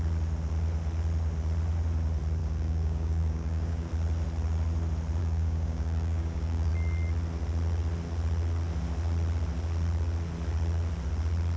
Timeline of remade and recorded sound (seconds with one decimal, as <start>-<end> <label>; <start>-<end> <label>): 0.0-2.4 recorded; 2.4-3.9 remade; 3.9-5.2 recorded; 5.2-6.7 remade; 6.7-11.6 recorded